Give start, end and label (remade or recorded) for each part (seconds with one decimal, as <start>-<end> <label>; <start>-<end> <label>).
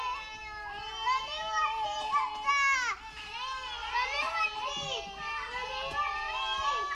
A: 0.0-0.4 recorded; 0.4-2.1 remade; 2.1-3.8 recorded; 3.8-4.3 remade; 4.3-6.9 recorded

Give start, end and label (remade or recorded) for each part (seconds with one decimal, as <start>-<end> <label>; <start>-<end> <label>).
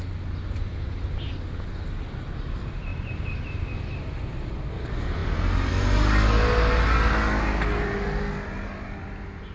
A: 0.0-2.9 recorded; 2.9-4.3 remade; 4.3-5.2 recorded; 5.2-5.7 remade; 5.7-9.5 recorded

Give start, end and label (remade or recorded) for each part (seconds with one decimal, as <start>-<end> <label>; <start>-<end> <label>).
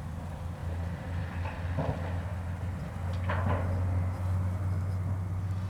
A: 0.0-5.7 recorded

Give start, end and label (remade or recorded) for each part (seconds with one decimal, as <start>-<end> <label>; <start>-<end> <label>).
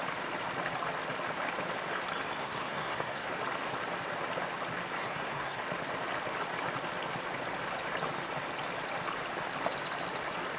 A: 0.0-2.4 recorded; 2.4-3.3 remade; 3.3-5.0 recorded; 5.0-5.6 remade; 5.6-10.6 recorded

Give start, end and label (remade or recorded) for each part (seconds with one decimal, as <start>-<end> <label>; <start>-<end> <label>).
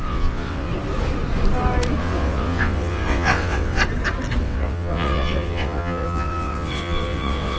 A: 0.0-0.7 remade; 0.7-2.0 recorded; 2.0-3.8 remade; 3.8-4.4 recorded; 4.4-7.6 remade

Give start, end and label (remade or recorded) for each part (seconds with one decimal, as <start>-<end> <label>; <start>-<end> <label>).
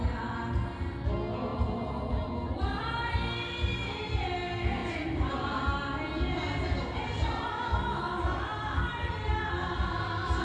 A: 0.0-1.5 recorded; 1.5-2.8 remade; 2.8-4.8 recorded; 4.8-5.3 remade; 5.3-8.5 recorded; 8.5-9.4 remade; 9.4-10.4 recorded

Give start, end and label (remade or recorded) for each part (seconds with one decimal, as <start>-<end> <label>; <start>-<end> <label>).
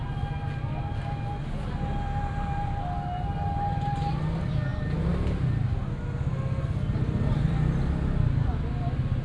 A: 0.0-9.2 recorded